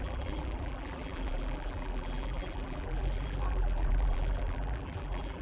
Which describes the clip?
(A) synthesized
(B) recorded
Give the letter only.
A